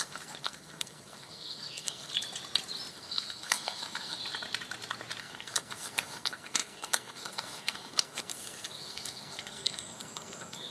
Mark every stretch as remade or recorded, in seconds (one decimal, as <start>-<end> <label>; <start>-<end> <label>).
0.0-2.1 remade; 2.1-2.9 recorded; 2.9-4.2 remade; 4.2-5.2 recorded; 5.2-10.7 remade